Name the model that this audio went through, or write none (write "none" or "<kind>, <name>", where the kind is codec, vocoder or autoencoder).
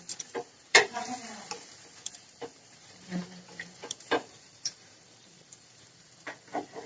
vocoder, BigVGAN v2